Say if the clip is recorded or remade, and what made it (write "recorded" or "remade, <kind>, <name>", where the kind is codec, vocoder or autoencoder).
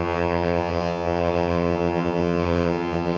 remade, vocoder, HiFi-GAN